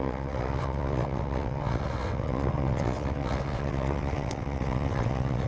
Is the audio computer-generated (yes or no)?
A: yes